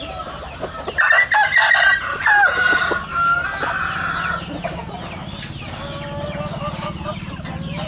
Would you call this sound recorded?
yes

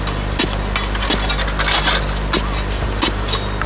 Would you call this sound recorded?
yes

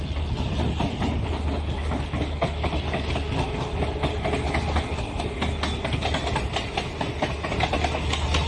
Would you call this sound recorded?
yes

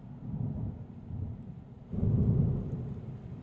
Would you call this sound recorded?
yes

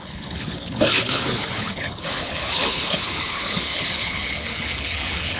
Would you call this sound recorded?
no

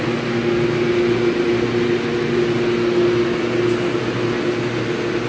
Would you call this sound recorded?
yes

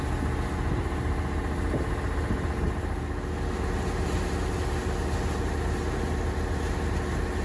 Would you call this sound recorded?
yes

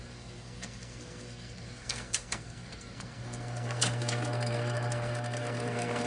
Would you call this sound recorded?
no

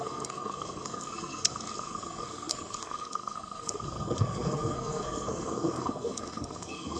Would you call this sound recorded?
no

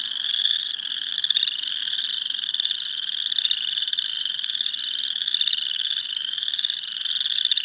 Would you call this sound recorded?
yes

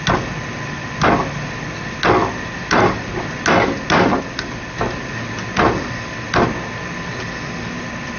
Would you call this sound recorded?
yes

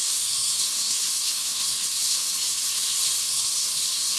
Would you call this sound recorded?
no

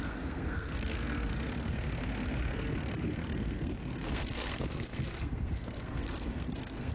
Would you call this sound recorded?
no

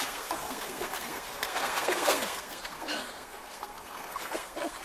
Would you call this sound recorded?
no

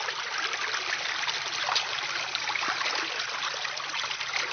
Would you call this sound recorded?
yes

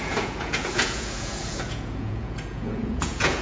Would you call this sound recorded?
no